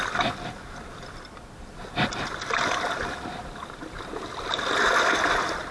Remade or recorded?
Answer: recorded